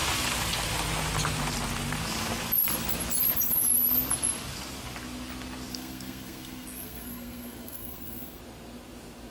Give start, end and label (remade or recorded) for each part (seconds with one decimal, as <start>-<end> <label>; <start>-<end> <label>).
0.0-5.7 recorded; 5.7-8.4 remade; 8.4-9.3 recorded